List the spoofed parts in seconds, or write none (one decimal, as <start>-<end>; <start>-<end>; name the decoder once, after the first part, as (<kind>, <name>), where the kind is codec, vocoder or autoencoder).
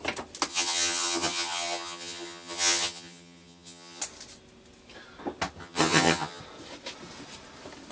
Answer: 0.5-4.0 (vocoder, HiFi-GAN); 5.6-6.4